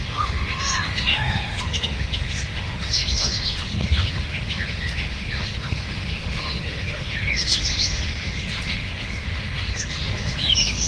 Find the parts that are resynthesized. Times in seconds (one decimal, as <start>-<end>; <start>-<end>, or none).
0.0-10.9